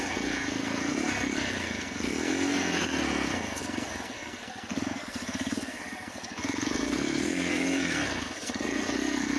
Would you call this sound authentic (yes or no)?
no